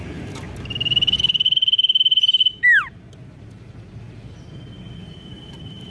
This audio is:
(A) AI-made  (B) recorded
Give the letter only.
B